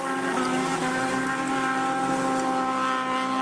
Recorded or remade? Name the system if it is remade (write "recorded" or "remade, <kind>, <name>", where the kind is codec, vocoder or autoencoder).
recorded